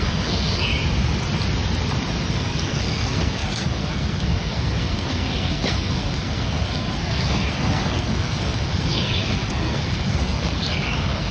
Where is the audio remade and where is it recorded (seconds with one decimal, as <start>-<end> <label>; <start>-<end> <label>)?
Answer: 0.0-0.7 remade; 0.7-2.3 recorded; 2.3-11.3 remade